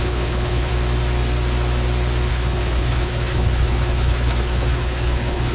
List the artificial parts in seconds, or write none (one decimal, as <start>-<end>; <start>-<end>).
0.0-0.7; 2.3-5.5

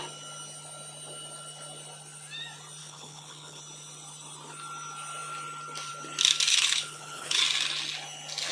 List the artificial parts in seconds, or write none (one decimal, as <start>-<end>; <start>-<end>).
2.8-3.6; 6.5-7.4